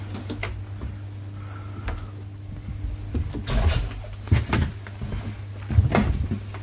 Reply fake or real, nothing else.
real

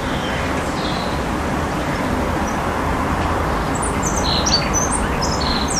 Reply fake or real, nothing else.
real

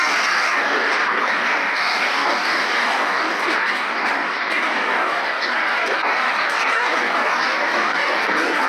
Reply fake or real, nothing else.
fake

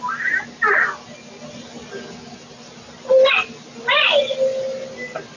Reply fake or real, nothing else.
real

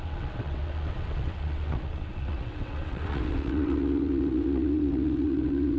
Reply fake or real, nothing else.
fake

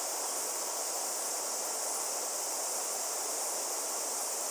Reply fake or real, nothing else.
real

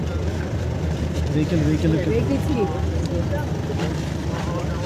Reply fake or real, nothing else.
real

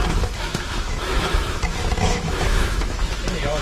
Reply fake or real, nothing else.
fake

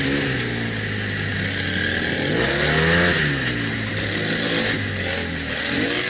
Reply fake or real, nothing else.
real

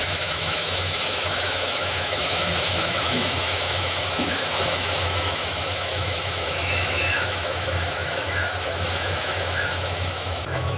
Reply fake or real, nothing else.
fake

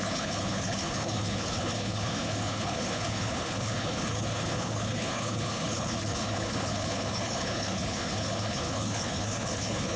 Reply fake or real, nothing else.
fake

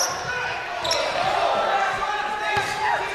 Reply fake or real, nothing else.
real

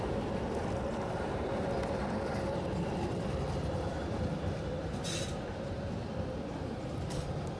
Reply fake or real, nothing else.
fake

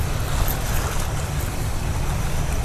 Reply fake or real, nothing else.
real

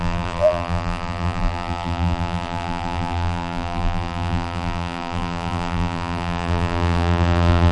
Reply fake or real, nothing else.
fake